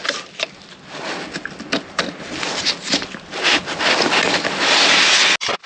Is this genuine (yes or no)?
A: yes